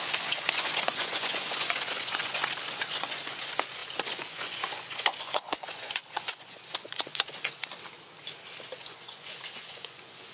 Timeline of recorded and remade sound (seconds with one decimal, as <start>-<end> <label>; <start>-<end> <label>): 0.0-7.7 remade; 7.7-8.8 recorded; 8.8-10.3 remade